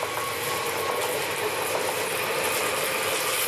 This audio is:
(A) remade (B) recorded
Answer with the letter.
B